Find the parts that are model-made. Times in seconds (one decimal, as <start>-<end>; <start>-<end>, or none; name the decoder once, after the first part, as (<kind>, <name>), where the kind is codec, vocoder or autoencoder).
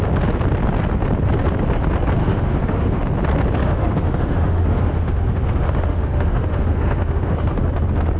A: 2.2-3.0 (autoencoder, DAC-VAE); 3.6-7.6